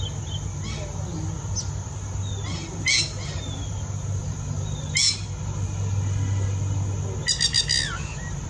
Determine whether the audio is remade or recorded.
recorded